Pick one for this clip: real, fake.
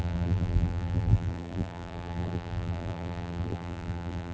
fake